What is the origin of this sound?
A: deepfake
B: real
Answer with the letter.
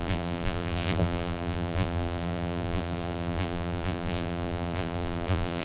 A